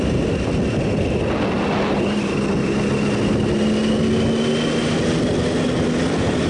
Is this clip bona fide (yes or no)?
yes